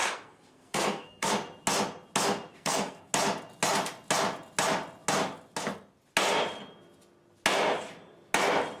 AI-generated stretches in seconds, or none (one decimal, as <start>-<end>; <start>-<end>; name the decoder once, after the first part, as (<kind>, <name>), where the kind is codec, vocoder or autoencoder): 0.0-1.3 (codec, SNAC); 2.5-3.1